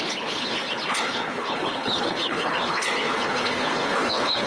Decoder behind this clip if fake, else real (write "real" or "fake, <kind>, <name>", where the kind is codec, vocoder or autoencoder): fake, codec, HILCodec